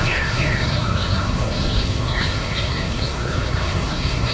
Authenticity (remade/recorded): remade